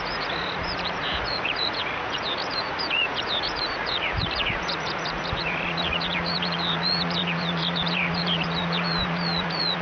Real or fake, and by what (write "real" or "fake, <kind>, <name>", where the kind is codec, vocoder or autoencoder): fake, vocoder, Vocos